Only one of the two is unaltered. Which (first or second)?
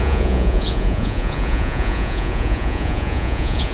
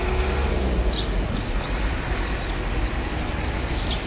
second